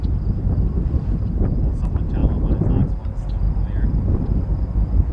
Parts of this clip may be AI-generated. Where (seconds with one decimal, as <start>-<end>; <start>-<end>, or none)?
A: 0.0-2.2; 2.7-3.2